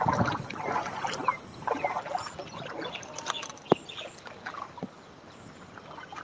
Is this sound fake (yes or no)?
no